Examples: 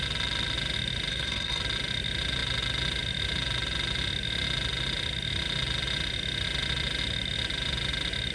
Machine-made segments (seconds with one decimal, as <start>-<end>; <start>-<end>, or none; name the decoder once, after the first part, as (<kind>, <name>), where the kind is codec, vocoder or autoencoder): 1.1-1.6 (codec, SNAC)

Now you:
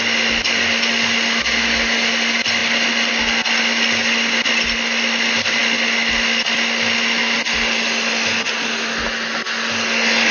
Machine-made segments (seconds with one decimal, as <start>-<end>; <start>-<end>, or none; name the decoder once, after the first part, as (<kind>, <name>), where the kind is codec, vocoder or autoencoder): none

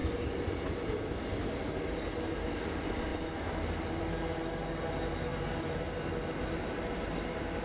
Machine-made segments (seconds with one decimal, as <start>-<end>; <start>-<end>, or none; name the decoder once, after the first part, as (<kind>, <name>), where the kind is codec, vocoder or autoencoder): none

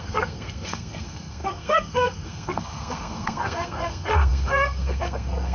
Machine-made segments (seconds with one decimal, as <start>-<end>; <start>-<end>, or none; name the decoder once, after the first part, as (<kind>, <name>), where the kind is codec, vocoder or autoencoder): 0.0-5.5 (codec, SNAC)

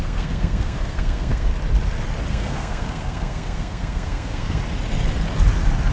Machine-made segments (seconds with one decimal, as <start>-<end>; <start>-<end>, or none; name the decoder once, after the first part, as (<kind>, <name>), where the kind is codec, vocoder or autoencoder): 0.0-1.5 (codec, SNAC); 2.3-4.6